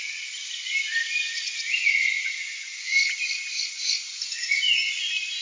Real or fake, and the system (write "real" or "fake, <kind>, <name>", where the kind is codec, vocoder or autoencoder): real